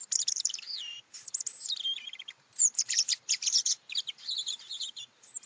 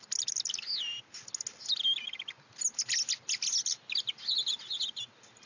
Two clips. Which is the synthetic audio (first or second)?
first